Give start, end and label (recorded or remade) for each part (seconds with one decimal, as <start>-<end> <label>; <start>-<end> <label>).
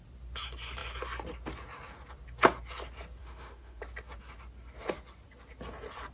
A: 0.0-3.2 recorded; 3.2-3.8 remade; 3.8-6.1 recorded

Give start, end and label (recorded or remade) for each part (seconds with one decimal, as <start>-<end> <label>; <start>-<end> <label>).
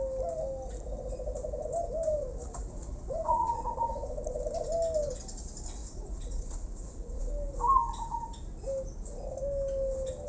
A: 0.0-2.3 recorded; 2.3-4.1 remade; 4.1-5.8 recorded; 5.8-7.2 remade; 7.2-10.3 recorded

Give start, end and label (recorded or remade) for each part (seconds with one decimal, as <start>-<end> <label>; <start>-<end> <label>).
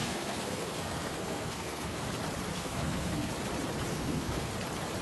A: 0.0-2.1 remade; 2.1-2.5 recorded; 2.5-3.3 remade; 3.3-3.9 recorded; 3.9-4.5 remade; 4.5-5.0 recorded